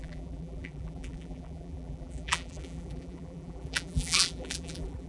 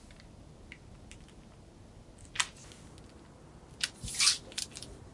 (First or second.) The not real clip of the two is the first